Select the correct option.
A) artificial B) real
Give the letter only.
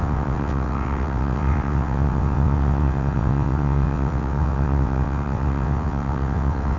A